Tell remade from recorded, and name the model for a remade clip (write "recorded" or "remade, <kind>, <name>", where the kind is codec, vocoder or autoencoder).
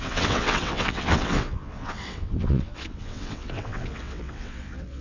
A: remade, vocoder, WaveNeXt